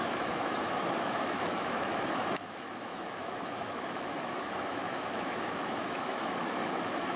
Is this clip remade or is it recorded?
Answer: remade